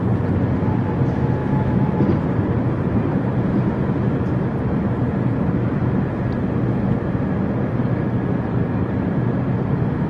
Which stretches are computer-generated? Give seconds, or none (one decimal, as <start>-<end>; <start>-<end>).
1.4-2.0